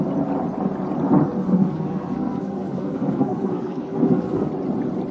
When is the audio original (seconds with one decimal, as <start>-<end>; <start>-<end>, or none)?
0.0-1.4; 4.5-5.1